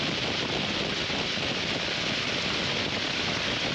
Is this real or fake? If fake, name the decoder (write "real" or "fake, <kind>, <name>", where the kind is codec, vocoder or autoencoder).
real